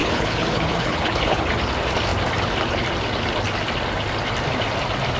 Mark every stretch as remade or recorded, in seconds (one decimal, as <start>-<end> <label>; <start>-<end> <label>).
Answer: 0.0-1.5 remade; 1.5-5.2 recorded